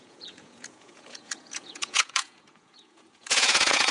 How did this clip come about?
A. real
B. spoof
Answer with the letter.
B